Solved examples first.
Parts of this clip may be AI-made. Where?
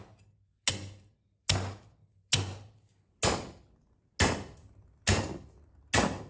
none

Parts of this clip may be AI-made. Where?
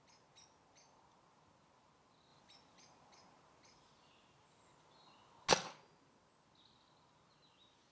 none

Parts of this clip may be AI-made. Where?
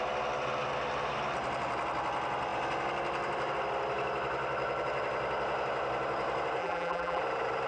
6.6-7.2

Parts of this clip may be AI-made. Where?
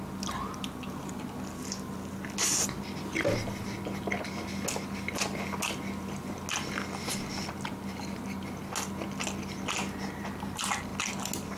none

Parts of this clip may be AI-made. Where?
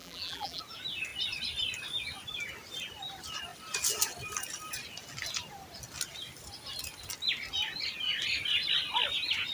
0.0-0.6